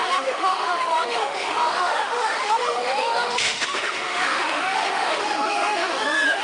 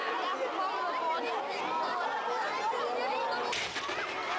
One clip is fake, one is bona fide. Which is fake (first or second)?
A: first